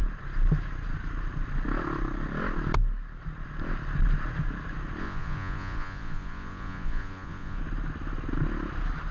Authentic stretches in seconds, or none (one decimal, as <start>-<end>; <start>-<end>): 0.0-5.0; 7.6-9.1